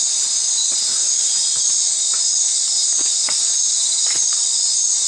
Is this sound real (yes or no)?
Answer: yes